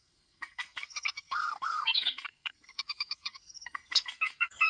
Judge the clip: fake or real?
fake